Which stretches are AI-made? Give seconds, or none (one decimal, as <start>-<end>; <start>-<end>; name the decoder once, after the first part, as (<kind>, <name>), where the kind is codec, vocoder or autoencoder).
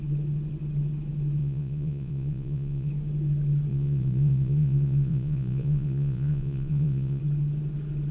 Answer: 1.4-2.9 (vocoder, Vocos); 3.7-7.2